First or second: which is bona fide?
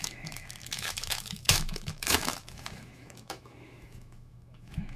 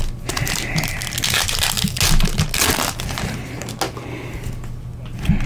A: second